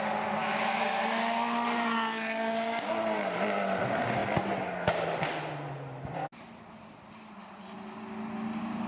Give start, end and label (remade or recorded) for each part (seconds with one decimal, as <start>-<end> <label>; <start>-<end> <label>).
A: 0.0-0.4 recorded; 0.4-2.9 remade; 2.9-8.9 recorded